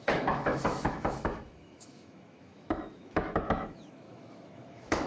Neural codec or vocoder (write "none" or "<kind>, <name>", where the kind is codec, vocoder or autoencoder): autoencoder, DAC-VAE